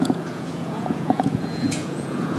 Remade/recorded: remade